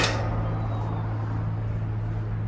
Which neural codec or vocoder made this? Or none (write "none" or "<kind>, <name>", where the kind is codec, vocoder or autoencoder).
none